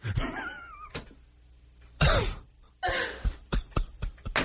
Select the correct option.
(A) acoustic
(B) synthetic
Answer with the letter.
A